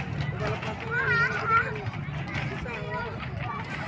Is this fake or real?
real